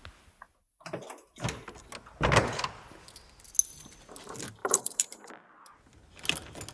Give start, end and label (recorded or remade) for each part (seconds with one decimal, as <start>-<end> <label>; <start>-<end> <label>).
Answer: 0.0-4.6 recorded; 4.6-5.3 remade; 5.3-6.7 recorded